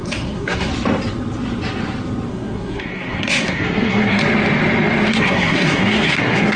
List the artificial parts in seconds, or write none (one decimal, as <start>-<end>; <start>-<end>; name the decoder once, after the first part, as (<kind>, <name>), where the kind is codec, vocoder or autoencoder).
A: 0.0-0.7 (codec, SNAC); 2.3-4.2; 5.1-6.6